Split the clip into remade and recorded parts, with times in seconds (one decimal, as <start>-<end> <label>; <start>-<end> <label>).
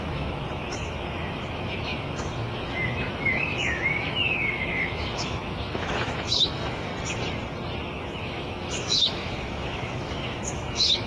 0.0-6.9 remade; 6.9-7.9 recorded; 7.9-11.1 remade